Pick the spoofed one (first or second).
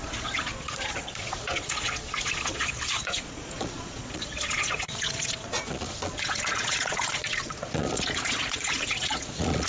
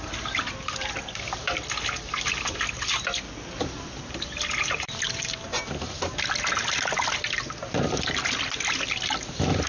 first